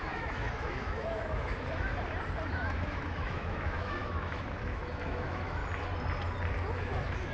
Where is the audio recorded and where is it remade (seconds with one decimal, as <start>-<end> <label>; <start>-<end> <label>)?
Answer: 0.0-1.9 remade; 1.9-2.5 recorded; 2.5-5.6 remade; 5.6-6.7 recorded; 6.7-7.3 remade